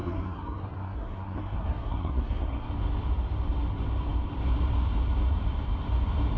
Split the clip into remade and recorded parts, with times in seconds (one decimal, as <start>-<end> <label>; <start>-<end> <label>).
0.0-2.7 remade; 2.7-6.4 recorded